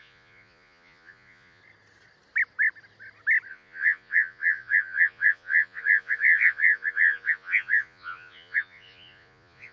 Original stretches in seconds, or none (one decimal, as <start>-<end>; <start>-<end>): 1.6-3.5